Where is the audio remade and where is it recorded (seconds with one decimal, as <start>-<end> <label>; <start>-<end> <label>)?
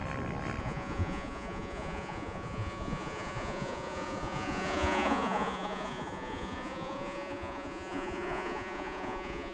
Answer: 0.0-0.6 recorded; 0.6-9.5 remade